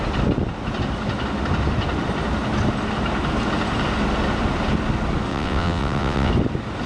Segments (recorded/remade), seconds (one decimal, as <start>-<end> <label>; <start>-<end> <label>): 0.0-5.3 recorded; 5.3-6.3 remade; 6.3-6.9 recorded

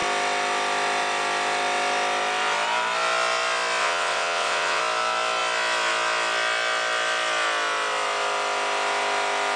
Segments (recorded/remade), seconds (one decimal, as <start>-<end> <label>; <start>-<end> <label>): 0.0-3.8 recorded; 3.8-4.8 remade; 4.8-9.6 recorded

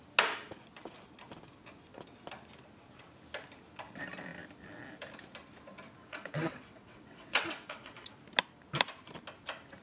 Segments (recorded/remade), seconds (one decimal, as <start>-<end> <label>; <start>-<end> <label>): 0.0-6.0 recorded; 6.0-8.1 remade; 8.1-9.8 recorded

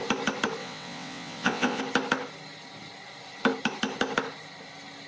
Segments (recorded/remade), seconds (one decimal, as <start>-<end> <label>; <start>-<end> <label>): 0.0-0.6 recorded; 0.6-1.8 remade; 1.8-5.1 recorded